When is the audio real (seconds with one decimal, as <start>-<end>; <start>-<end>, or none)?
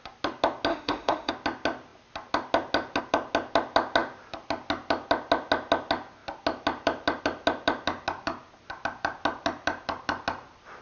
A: 0.0-0.7; 1.3-10.8